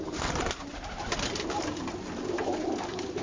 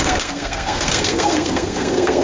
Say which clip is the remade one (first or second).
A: second